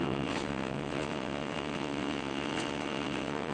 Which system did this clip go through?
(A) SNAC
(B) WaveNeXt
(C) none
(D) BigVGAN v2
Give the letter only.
B